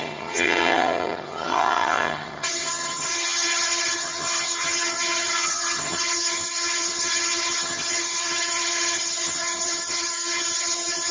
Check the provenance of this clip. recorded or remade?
remade